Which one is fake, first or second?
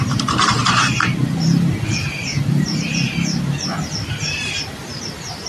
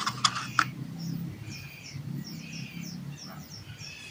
first